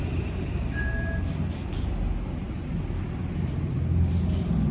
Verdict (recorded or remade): recorded